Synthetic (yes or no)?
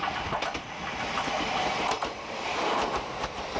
no